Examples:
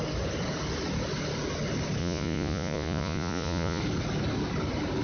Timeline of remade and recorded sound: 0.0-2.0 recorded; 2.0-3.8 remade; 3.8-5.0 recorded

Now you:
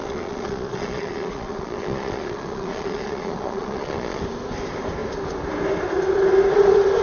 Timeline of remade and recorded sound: 0.0-4.2 remade; 4.2-7.0 recorded

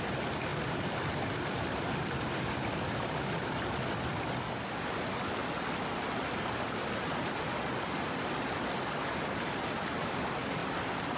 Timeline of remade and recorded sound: 0.0-11.2 recorded

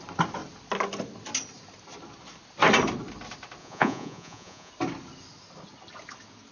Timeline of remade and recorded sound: 0.0-3.6 recorded; 3.6-4.7 remade; 4.7-6.5 recorded

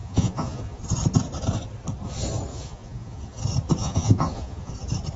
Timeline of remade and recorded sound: 0.0-0.8 remade; 0.8-2.5 recorded; 2.5-3.4 remade; 3.4-3.8 recorded; 3.8-4.7 remade; 4.7-5.2 recorded